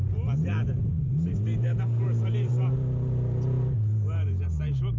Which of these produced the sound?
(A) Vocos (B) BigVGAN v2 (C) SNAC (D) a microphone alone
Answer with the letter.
B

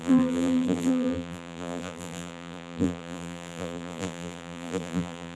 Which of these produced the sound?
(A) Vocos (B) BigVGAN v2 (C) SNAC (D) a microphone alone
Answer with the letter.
B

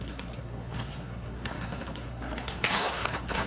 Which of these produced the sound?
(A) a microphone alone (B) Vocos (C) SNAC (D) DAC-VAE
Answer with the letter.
C